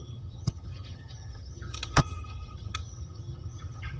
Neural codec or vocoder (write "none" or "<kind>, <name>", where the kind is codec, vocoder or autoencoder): vocoder, HiFi-GAN